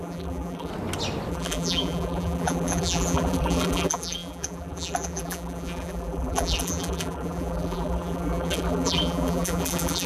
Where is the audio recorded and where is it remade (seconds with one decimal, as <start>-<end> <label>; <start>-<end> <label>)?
0.0-0.7 remade; 0.7-1.3 recorded; 1.3-10.1 remade